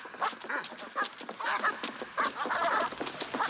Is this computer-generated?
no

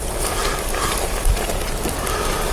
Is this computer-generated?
no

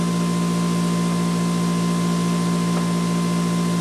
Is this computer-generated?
no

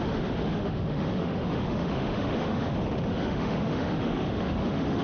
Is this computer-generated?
yes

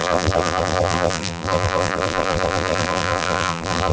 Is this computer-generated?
yes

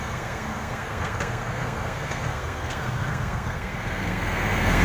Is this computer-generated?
yes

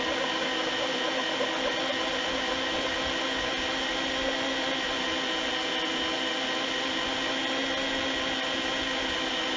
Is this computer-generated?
no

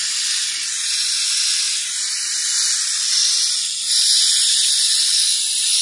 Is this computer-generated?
no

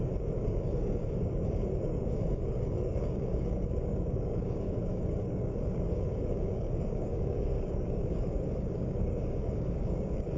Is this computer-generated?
yes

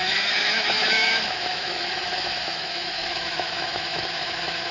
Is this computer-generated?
yes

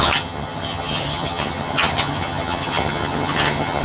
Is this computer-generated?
yes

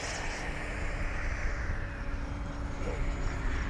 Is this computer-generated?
no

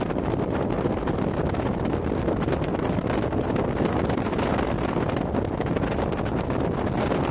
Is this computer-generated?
no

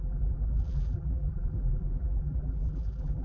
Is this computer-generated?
yes